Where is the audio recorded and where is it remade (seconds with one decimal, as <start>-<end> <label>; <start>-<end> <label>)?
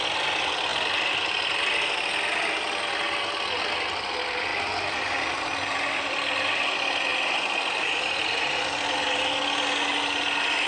0.0-10.7 recorded